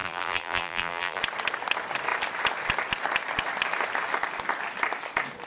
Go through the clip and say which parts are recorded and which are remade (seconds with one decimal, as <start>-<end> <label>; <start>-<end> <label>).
0.0-1.2 remade; 1.2-5.5 recorded